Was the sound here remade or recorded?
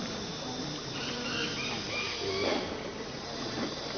recorded